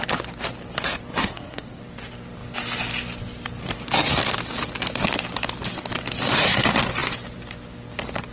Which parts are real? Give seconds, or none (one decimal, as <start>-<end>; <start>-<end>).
0.0-1.2; 1.8-8.3